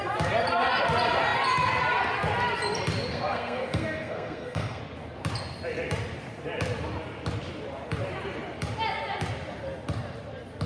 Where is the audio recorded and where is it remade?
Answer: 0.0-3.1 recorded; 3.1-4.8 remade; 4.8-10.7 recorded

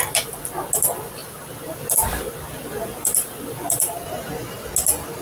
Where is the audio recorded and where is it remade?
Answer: 0.0-1.2 recorded; 1.2-4.3 remade; 4.3-5.2 recorded

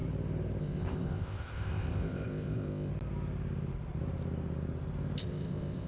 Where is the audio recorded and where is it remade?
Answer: 0.0-0.6 recorded; 0.6-2.9 remade; 2.9-5.2 recorded; 5.2-5.9 remade

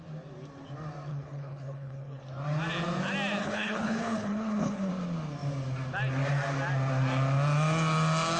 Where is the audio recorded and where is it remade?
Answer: 0.0-1.1 recorded; 1.1-2.2 remade; 2.2-3.4 recorded; 3.4-4.9 remade; 4.9-8.4 recorded

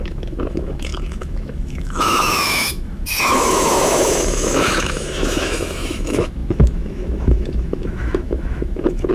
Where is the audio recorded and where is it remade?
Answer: 0.0-9.1 remade

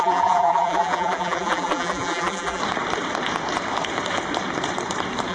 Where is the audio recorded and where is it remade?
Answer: 0.0-2.6 remade; 2.6-5.3 recorded

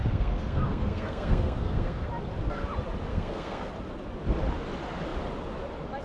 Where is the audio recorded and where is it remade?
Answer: 0.0-2.1 remade; 2.1-3.1 recorded; 3.1-3.7 remade; 3.7-6.0 recorded

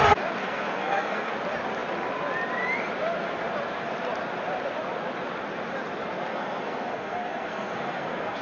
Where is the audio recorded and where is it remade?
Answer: 0.0-0.4 recorded; 0.4-1.3 remade; 1.3-6.3 recorded; 6.3-8.4 remade